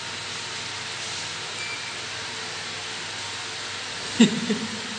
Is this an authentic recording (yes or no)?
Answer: yes